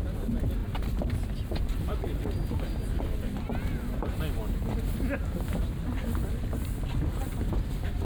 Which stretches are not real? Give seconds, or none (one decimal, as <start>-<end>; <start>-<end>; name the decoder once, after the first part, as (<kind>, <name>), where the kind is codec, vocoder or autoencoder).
0.6-2.1 (vocoder, BigVGAN v2); 3.5-4.4; 5.2-6.0; 7.3-8.0